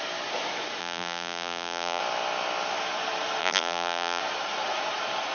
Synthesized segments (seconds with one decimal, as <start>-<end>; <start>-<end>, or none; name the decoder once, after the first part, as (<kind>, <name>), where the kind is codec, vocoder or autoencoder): 0.8-2.0 (vocoder, BigVGAN v2); 3.4-4.2